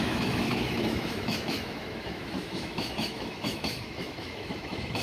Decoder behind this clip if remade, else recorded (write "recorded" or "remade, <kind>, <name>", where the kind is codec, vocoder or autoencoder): remade, autoencoder, DAC-VAE